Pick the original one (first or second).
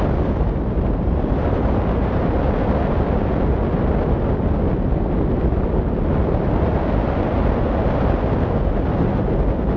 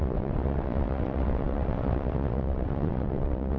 first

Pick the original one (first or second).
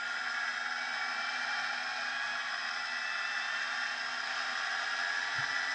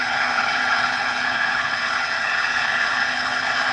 first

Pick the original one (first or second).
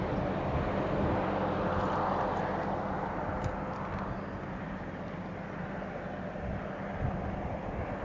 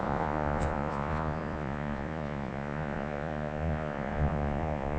first